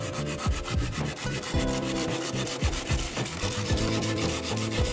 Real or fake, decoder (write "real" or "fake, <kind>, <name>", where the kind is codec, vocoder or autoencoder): fake, vocoder, BigVGAN v2